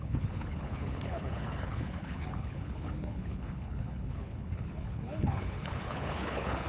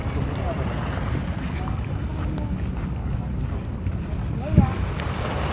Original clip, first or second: second